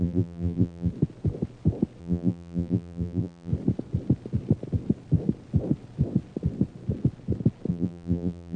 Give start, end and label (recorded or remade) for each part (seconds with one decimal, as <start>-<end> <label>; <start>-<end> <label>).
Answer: 0.0-0.9 remade; 0.9-2.0 recorded; 2.0-3.5 remade; 3.5-7.7 recorded; 7.7-8.6 remade